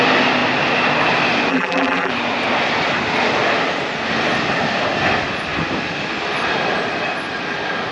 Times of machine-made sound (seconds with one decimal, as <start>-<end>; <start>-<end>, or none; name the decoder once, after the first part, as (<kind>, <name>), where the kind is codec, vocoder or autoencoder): 1.5-2.1 (vocoder, BigVGAN v2)